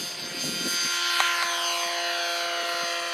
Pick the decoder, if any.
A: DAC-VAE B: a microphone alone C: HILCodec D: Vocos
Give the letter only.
B